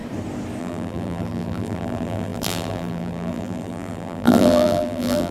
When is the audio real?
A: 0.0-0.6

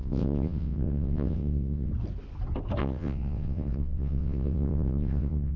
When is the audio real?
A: 1.9-2.8